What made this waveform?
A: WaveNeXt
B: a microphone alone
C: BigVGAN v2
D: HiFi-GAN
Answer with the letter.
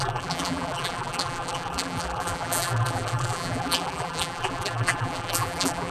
C